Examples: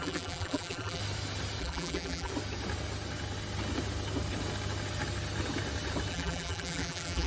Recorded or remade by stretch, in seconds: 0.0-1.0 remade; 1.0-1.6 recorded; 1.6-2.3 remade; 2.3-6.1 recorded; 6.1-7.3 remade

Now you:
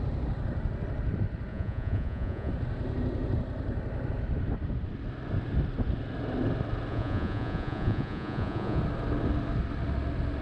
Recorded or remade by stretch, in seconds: 0.0-1.5 recorded; 1.5-2.5 remade; 2.5-6.9 recorded; 6.9-8.8 remade; 8.8-10.4 recorded